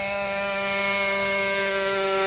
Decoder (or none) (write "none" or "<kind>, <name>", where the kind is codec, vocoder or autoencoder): autoencoder, DAC-VAE